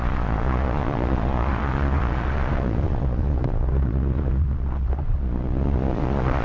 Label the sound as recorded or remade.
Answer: remade